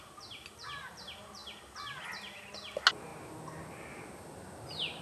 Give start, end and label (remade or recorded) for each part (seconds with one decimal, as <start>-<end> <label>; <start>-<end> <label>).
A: 0.0-5.0 recorded